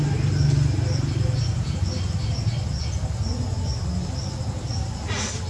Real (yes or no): yes